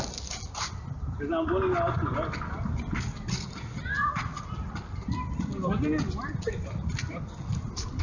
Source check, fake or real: real